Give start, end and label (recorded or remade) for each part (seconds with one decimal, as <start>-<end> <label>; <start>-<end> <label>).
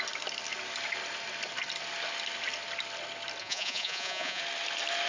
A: 0.0-3.4 recorded; 3.4-4.4 remade; 4.4-5.1 recorded